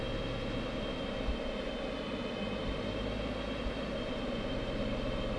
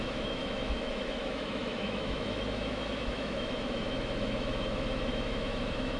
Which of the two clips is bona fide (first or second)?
first